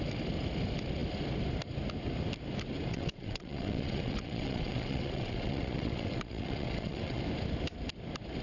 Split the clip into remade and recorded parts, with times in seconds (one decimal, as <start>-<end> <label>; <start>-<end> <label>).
0.0-2.9 recorded; 2.9-7.2 remade; 7.2-8.4 recorded